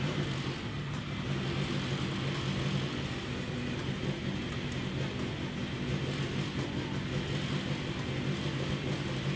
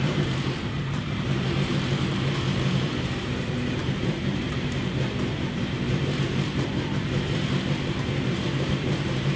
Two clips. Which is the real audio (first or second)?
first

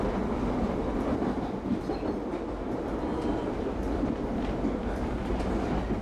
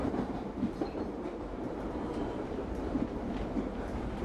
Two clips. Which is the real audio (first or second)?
first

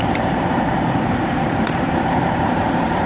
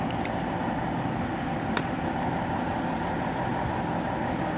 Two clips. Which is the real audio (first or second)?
second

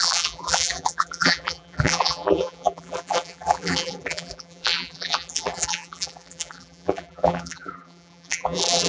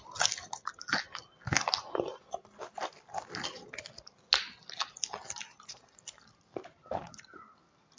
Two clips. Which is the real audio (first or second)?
second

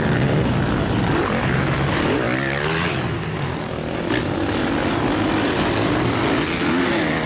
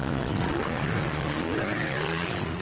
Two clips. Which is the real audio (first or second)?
first